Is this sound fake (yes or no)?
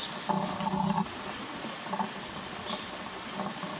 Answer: no